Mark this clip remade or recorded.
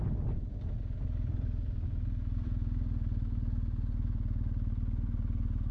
recorded